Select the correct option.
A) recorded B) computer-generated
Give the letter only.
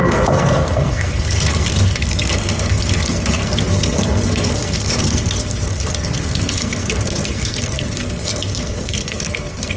B